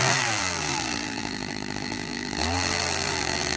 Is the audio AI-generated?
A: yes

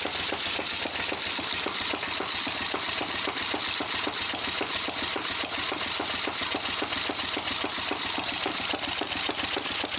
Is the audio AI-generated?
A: no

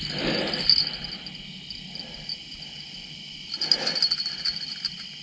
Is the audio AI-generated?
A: no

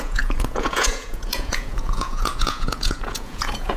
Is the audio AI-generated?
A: yes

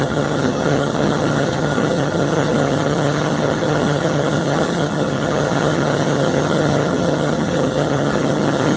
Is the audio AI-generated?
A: yes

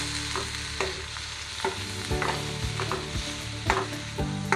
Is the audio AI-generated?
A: no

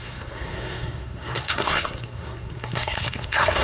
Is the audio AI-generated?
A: yes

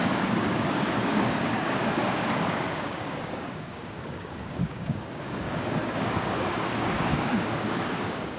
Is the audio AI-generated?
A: yes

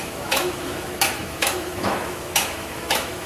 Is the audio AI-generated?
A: yes